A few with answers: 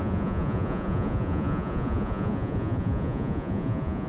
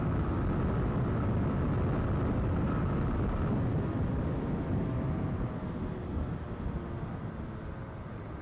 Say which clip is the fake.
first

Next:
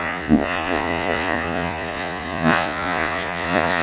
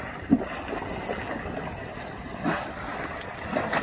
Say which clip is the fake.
first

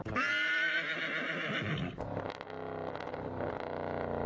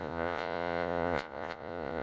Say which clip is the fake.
second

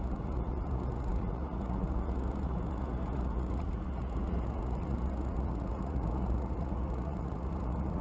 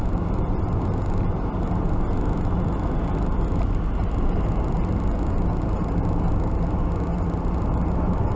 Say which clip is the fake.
first